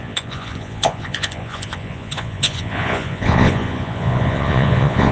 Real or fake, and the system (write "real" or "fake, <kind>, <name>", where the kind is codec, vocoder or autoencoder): fake, vocoder, Vocos